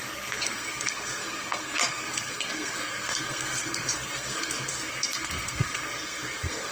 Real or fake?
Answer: fake